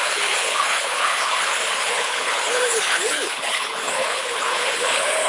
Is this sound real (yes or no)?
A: no